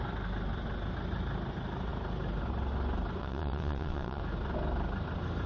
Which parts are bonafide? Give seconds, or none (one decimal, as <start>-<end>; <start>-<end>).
0.0-3.2; 4.2-5.5